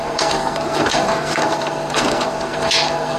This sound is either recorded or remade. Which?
remade